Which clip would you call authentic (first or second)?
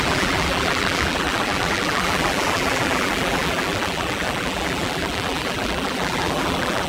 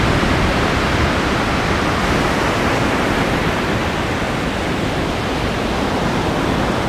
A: second